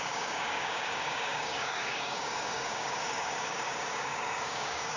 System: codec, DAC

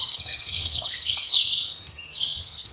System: codec, SNAC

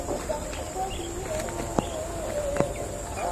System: none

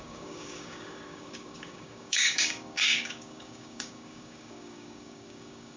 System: codec, DAC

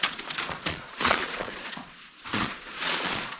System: vocoder, Vocos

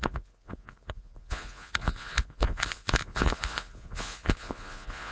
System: vocoder, Vocos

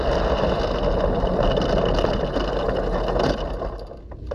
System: none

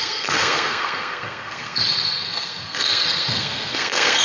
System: codec, SNAC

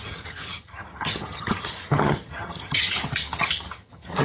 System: vocoder, HiFi-GAN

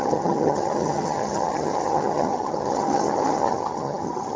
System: vocoder, HiFi-GAN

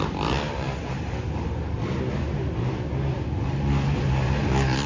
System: none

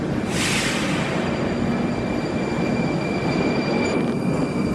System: none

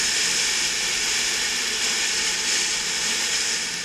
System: none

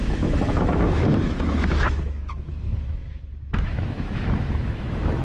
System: autoencoder, DAC-VAE